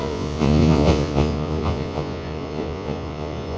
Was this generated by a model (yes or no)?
yes